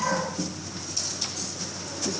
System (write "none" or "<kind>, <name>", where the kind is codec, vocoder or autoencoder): none